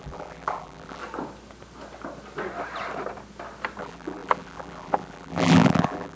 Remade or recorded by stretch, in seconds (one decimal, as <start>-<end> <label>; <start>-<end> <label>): 0.0-1.0 remade; 1.0-3.8 recorded; 3.8-6.2 remade